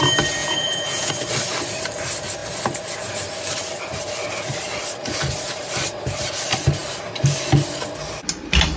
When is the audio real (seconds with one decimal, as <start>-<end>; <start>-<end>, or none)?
0.0-0.4; 1.1-8.8